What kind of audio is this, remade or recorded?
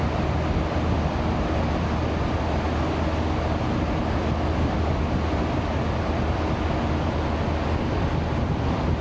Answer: recorded